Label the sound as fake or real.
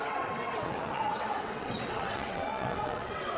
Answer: fake